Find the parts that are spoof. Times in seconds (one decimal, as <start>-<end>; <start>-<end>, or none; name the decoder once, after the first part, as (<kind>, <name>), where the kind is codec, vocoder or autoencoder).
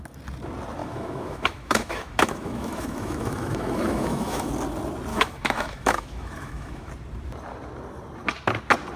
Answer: 0.8-4.5 (autoencoder, DAC-VAE); 5.1-6.9